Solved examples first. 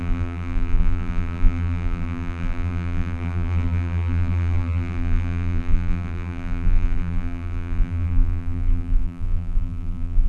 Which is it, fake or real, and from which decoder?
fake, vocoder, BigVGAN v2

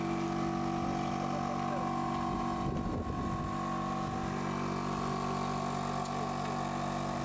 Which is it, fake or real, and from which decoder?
real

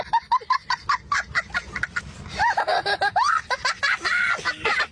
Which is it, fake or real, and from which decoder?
real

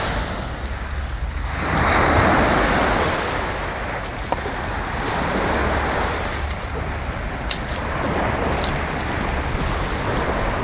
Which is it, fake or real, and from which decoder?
real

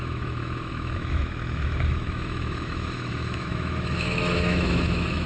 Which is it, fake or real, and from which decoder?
fake, autoencoder, DAC-VAE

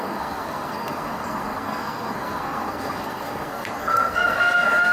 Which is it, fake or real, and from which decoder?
fake, codec, SNAC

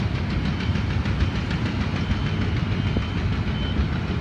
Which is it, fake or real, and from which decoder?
real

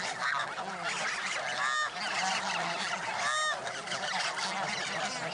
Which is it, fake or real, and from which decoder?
real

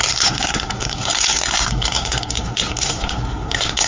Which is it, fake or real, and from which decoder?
fake, codec, SNAC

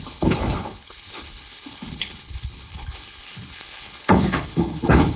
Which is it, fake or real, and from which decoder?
fake, codec, HILCodec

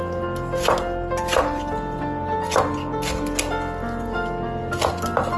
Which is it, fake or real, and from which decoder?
real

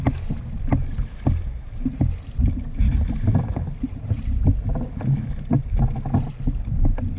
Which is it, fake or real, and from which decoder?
real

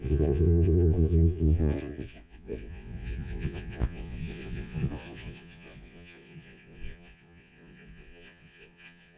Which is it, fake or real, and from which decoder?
fake, vocoder, Vocos